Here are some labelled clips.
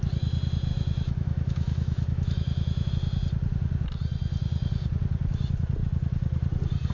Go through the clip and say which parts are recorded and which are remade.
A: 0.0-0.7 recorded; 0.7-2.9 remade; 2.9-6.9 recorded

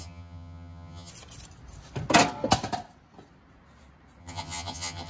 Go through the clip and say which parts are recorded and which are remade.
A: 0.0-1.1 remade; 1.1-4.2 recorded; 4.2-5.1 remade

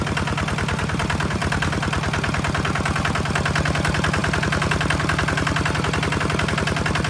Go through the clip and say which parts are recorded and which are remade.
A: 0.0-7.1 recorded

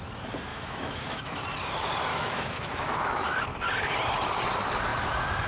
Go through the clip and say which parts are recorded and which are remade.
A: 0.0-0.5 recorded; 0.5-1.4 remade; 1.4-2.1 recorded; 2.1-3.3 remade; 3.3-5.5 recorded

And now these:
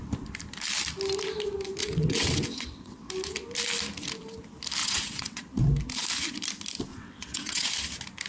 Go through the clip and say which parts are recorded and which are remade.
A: 0.0-1.8 recorded; 1.8-3.1 remade; 3.1-4.8 recorded; 4.8-5.4 remade; 5.4-6.9 recorded; 6.9-7.7 remade; 7.7-8.3 recorded

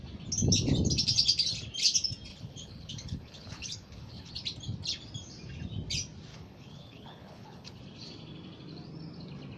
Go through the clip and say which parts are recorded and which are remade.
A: 0.0-2.3 recorded; 2.3-4.3 remade; 4.3-6.3 recorded; 6.3-7.8 remade; 7.8-9.6 recorded

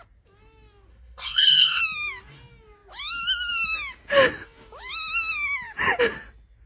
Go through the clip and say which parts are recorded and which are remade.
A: 0.0-0.9 recorded; 0.9-1.8 remade; 1.8-6.7 recorded